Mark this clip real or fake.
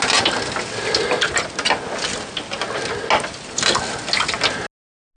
real